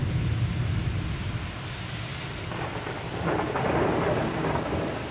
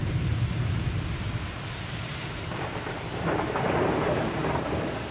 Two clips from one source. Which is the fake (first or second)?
second